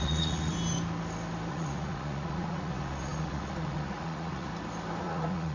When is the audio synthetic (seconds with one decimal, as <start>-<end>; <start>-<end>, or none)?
0.0-0.5; 1.5-4.5; 5.0-5.5

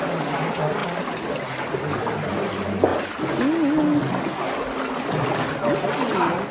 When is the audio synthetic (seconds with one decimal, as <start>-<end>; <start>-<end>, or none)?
none